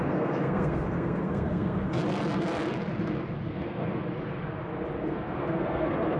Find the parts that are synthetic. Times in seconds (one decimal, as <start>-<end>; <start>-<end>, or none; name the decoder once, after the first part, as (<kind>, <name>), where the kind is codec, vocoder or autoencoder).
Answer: 0.0-2.0 (codec, SNAC); 3.5-4.0; 5.0-6.2